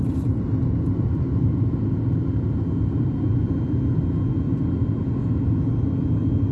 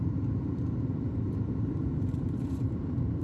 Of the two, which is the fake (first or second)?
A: second